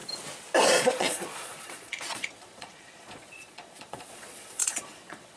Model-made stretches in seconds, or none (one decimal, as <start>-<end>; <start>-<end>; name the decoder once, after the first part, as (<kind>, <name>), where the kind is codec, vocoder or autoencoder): 0.7-5.4 (vocoder, Vocos)